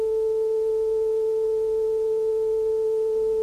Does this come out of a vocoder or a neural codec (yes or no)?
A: no